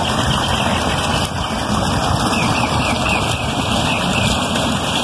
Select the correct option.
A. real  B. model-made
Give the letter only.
A